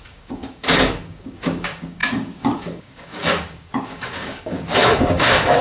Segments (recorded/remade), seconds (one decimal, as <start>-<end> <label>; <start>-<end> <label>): 0.0-5.6 remade